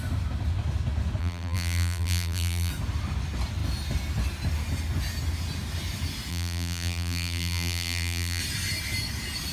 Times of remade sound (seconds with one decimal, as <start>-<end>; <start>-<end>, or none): 1.2-2.7; 6.3-8.4

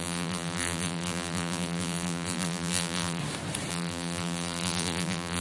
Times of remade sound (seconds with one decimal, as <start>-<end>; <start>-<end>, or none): 0.0-3.2; 3.7-5.4

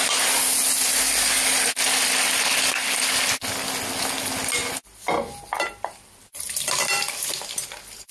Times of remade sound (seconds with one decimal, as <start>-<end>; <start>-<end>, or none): none

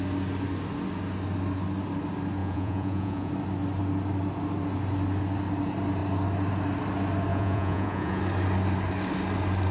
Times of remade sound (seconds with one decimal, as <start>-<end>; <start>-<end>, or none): 2.4-3.3; 7.3-8.2

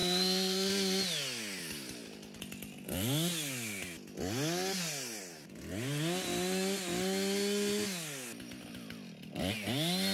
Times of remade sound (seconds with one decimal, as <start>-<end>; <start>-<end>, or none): 0.0-0.7

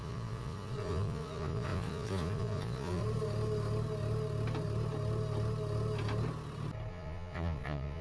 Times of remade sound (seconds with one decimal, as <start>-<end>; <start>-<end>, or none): 0.0-3.0; 6.9-8.0

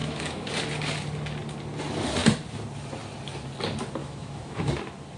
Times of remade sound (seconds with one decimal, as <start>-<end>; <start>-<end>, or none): 0.0-0.5; 4.0-4.7

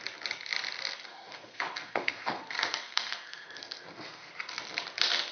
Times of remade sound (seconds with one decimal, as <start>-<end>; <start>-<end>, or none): 1.1-4.3